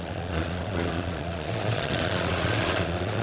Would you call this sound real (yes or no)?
no